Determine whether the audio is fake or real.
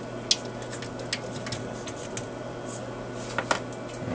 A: real